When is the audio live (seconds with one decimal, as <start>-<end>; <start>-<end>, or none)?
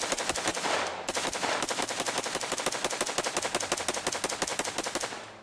0.0-0.5; 2.6-4.5